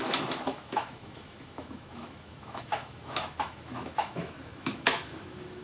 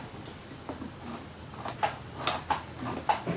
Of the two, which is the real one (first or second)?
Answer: second